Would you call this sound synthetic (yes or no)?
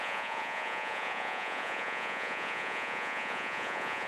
yes